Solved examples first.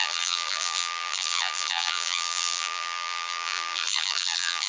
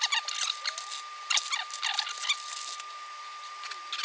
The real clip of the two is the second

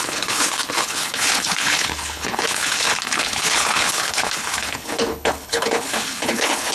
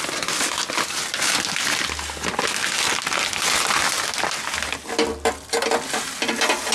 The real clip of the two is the second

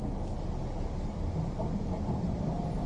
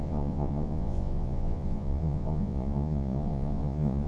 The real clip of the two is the first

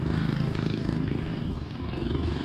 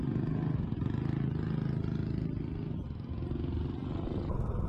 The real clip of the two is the second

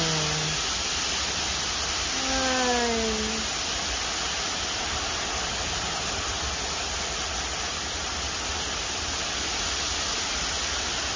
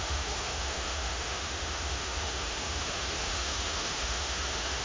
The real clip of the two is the first